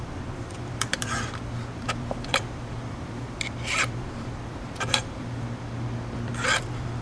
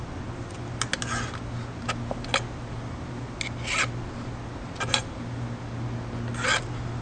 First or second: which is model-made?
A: first